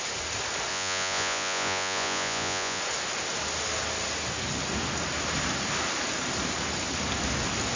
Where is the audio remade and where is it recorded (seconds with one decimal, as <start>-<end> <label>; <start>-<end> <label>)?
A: 0.0-0.7 recorded; 0.7-2.8 remade; 2.8-7.8 recorded